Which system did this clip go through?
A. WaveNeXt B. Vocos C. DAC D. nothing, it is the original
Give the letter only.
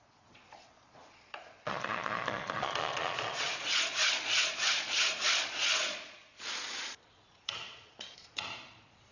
B